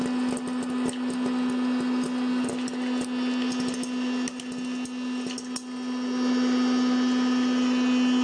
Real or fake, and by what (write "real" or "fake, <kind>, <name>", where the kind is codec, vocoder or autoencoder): real